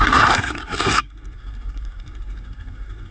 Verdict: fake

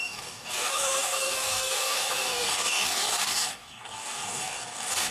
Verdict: fake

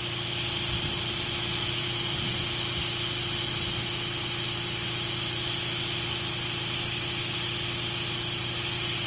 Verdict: real